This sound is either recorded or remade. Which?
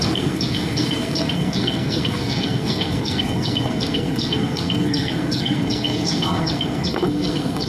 remade